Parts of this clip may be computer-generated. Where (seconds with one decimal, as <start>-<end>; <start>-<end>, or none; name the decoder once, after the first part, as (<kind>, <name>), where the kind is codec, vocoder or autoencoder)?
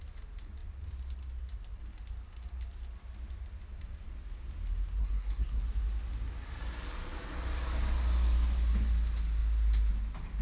5.0-5.6 (codec, SNAC)